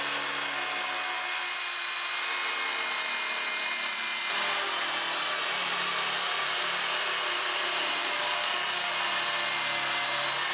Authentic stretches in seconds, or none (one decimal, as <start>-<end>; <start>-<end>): 0.0-8.0; 8.9-10.5